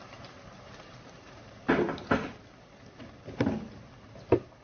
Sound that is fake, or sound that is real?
fake